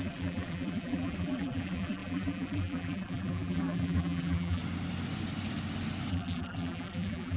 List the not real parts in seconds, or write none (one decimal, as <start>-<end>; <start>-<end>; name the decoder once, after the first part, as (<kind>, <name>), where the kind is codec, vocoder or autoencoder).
0.0-4.6 (vocoder, BigVGAN v2); 6.1-7.4